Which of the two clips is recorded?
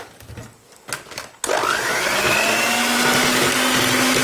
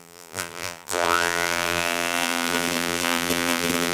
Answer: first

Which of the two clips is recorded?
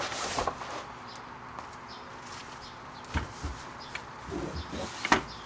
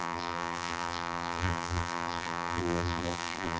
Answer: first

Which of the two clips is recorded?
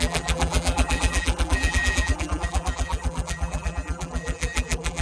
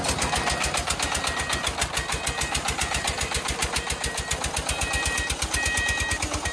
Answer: second